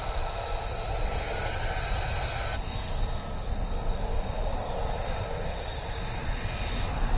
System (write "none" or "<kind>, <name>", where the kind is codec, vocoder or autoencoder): none